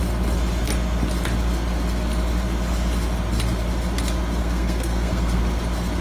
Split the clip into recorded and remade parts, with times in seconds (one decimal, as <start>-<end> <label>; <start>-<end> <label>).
0.0-4.4 recorded; 4.4-5.4 remade; 5.4-6.0 recorded

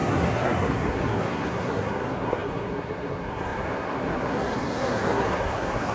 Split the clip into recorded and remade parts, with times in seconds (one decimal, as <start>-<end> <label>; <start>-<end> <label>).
0.0-5.9 remade

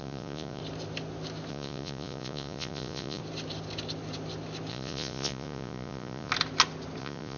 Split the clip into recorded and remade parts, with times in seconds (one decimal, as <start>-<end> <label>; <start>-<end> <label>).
0.0-0.6 remade; 0.6-1.5 recorded; 1.5-3.2 remade; 3.2-4.7 recorded; 4.7-6.3 remade; 6.3-7.0 recorded; 7.0-7.4 remade

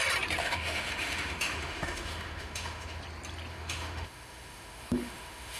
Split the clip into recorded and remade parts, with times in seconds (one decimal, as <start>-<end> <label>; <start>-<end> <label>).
0.0-0.4 recorded; 0.4-3.0 remade; 3.0-3.5 recorded; 3.5-5.6 remade